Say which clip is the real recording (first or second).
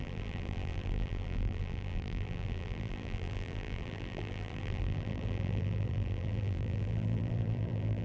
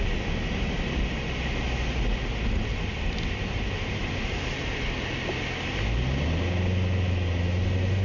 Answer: second